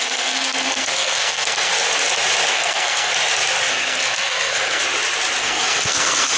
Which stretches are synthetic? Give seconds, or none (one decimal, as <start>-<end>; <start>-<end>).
0.0-1.7; 2.5-3.1; 3.7-4.8; 5.4-6.4